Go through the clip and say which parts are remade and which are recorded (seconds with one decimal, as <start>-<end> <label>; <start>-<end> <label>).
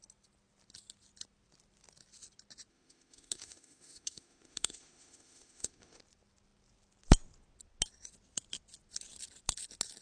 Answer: 0.0-2.7 recorded; 2.7-6.0 remade; 6.0-10.0 recorded